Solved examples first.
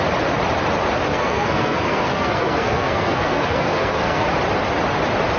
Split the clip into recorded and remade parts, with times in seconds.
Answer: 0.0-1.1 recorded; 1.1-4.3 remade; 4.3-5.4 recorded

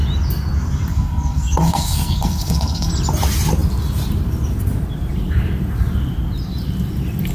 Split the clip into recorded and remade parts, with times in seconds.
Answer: 0.0-0.9 recorded; 0.9-2.9 remade; 2.9-7.3 recorded

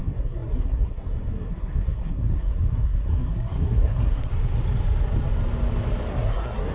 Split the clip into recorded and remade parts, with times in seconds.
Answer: 0.0-4.3 remade; 4.3-6.1 recorded; 6.1-6.7 remade